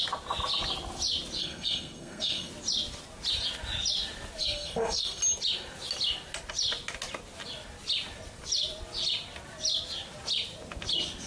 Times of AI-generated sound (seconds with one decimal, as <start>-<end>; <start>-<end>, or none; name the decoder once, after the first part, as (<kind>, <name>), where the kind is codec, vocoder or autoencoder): 1.4-2.5 (codec, SNAC); 4.4-5.2